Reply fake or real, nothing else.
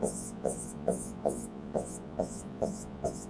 fake